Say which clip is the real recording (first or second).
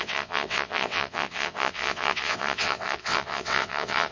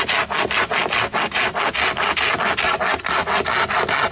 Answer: second